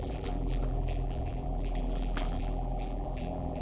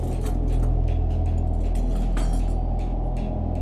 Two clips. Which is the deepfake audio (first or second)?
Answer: first